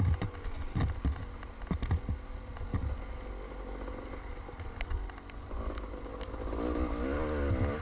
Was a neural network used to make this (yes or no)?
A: no